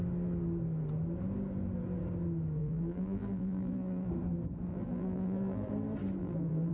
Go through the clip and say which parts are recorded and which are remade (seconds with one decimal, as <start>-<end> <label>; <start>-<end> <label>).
0.0-2.6 recorded; 2.6-4.1 remade; 4.1-4.7 recorded; 4.7-5.7 remade; 5.7-6.2 recorded; 6.2-6.7 remade